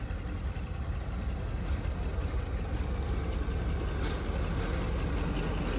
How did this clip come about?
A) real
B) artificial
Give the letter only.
A